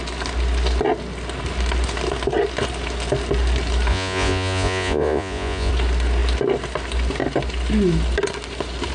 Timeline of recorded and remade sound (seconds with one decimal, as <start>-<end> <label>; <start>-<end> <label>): 0.0-3.9 recorded; 3.9-5.7 remade; 5.7-8.9 recorded